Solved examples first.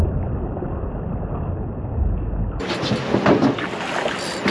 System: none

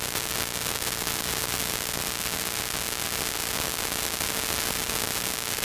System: none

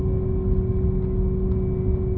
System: none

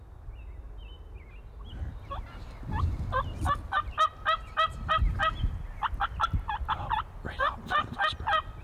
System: none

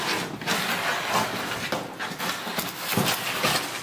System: none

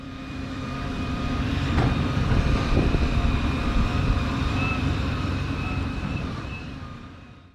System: vocoder, BigVGAN v2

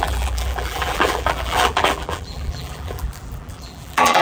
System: vocoder, BigVGAN v2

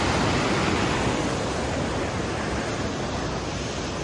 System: none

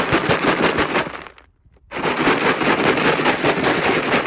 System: none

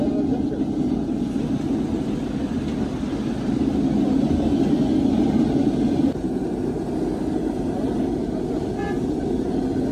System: none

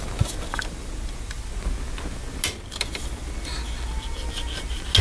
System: none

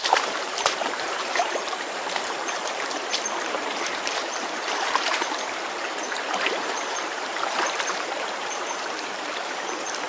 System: vocoder, BigVGAN v2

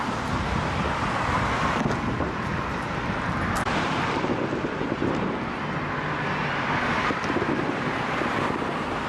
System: none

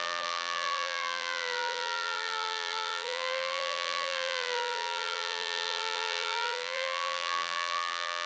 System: vocoder, BigVGAN v2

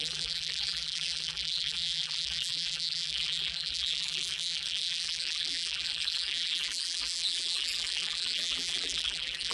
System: vocoder, BigVGAN v2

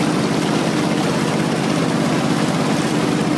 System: none